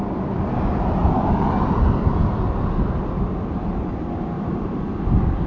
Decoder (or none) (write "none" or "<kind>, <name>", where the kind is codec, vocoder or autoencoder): none